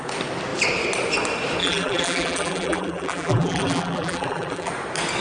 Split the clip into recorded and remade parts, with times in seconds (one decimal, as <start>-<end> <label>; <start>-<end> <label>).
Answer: 0.0-1.6 recorded; 1.6-4.7 remade; 4.7-5.2 recorded